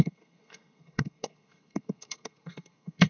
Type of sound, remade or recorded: remade